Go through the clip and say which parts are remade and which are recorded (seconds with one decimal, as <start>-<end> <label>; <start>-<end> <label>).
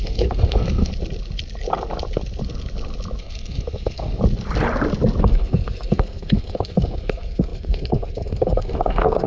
0.0-0.9 remade; 0.9-3.2 recorded; 3.2-4.2 remade; 4.2-5.2 recorded; 5.2-9.3 remade